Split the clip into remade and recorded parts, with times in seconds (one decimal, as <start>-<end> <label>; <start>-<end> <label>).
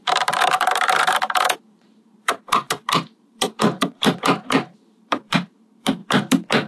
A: 0.0-6.7 remade